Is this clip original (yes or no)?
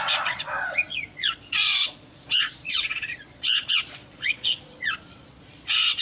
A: no